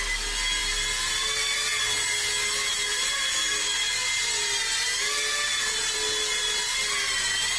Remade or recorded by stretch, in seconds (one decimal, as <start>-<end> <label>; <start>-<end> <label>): 0.0-7.6 recorded